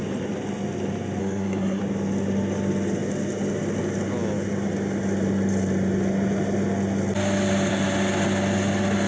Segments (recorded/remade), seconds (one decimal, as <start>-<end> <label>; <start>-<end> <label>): 0.0-1.2 recorded; 1.2-1.8 remade; 1.8-9.1 recorded